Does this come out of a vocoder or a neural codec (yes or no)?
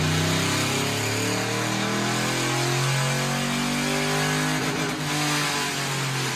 no